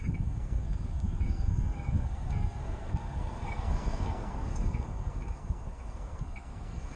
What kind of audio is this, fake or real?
fake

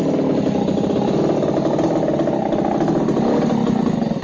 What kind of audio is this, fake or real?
real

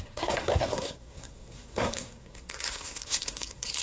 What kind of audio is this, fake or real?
fake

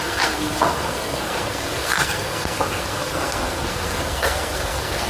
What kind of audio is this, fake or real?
fake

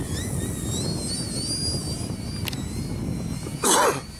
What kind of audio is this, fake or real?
real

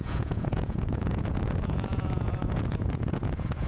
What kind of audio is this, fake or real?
fake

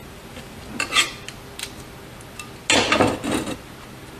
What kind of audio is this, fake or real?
real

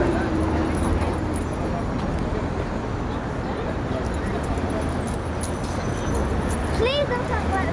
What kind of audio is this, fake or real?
real